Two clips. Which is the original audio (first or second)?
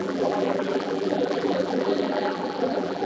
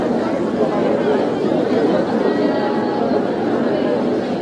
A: second